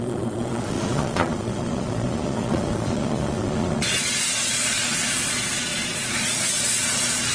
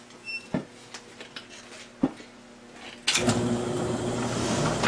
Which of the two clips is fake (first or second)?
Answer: first